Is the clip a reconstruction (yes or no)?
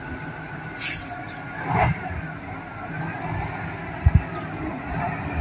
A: no